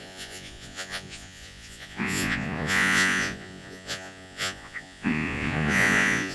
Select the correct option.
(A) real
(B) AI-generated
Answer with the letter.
B